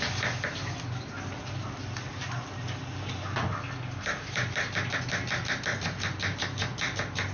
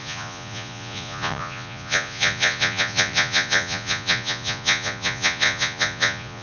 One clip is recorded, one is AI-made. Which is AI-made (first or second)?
second